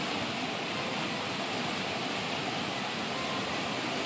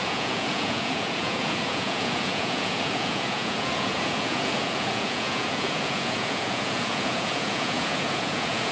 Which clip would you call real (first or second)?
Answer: first